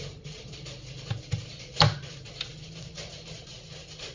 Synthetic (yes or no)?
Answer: yes